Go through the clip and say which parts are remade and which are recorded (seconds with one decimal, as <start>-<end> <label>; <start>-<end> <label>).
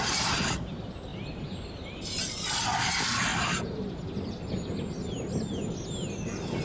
0.0-6.6 recorded